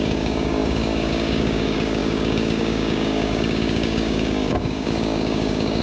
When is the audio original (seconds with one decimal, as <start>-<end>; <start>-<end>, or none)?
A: none